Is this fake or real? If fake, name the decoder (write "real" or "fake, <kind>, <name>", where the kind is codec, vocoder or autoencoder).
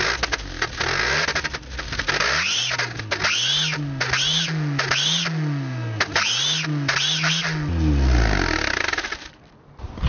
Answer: real